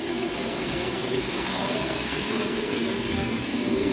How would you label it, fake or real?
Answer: fake